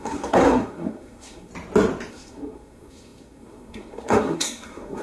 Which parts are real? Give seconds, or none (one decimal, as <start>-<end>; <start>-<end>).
1.5-2.1